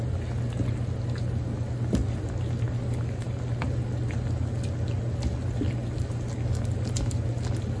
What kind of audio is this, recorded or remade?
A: recorded